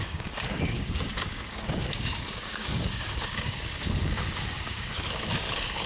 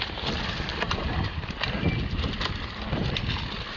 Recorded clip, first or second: second